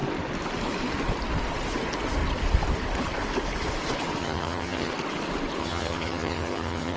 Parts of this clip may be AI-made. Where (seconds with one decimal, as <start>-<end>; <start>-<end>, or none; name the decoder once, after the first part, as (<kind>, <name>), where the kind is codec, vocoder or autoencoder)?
4.2-4.9 (vocoder, HiFi-GAN); 5.6-7.0